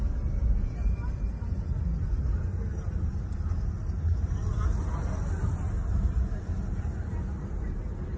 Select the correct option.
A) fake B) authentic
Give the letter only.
B